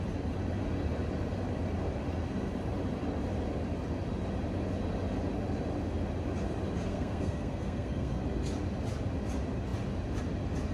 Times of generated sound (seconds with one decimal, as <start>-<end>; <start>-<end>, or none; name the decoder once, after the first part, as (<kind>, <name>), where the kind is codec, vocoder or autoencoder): 6.9-8.2 (codec, SNAC)